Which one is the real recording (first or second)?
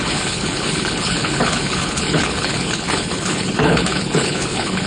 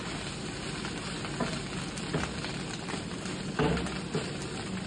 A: second